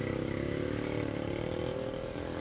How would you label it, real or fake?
real